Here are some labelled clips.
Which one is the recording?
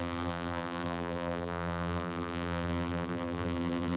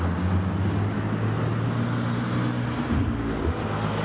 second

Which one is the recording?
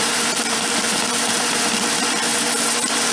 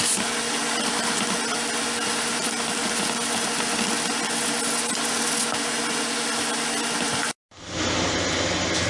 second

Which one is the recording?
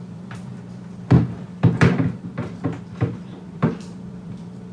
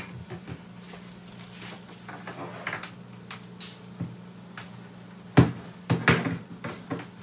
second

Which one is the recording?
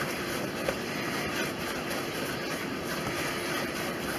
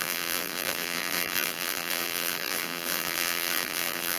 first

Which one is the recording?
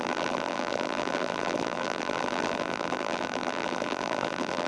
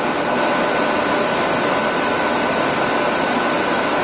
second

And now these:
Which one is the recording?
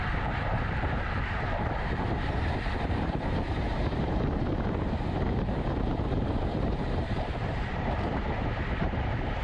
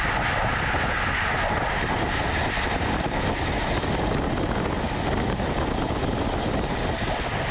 second